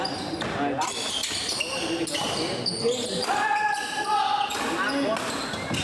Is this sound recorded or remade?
recorded